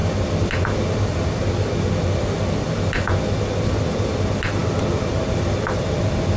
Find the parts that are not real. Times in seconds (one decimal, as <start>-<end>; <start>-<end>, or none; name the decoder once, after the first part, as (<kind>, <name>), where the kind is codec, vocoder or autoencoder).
none